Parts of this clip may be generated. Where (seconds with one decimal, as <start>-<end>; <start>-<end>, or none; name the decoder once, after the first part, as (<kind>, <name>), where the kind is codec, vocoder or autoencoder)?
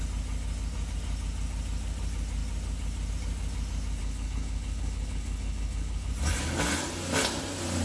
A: 4.0-6.1 (codec, HILCodec)